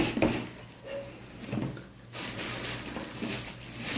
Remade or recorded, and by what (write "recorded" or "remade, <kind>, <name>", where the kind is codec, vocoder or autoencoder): recorded